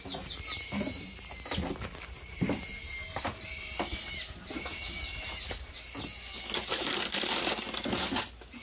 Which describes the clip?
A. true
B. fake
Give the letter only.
A